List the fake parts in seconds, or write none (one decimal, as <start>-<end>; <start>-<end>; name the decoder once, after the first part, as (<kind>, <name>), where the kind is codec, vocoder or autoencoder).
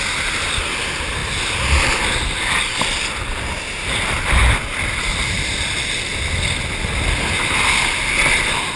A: none